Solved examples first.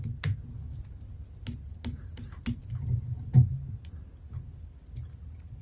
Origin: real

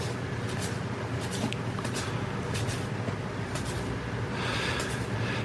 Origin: real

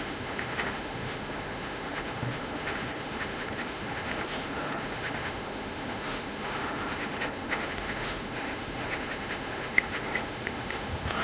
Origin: fake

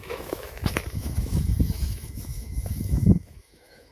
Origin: fake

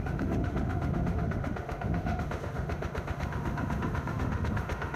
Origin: fake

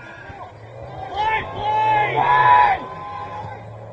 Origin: real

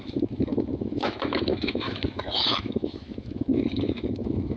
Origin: fake